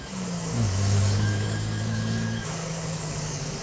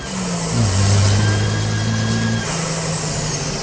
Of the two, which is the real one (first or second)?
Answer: second